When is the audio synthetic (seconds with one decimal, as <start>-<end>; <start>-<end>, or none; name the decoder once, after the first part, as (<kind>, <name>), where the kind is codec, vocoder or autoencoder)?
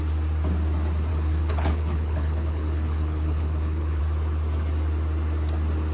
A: 1.1-4.0 (codec, HILCodec)